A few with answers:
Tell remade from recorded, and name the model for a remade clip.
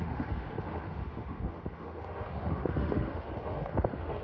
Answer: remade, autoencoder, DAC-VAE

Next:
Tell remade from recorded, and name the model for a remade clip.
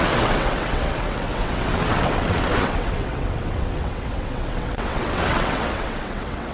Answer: remade, vocoder, WaveNeXt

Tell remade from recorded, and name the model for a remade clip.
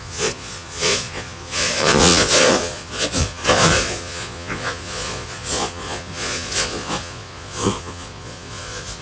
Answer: remade, vocoder, Vocos